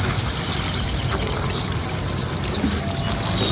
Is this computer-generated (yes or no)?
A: no